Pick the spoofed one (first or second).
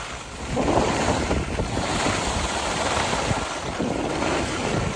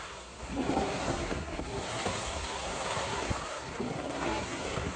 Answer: second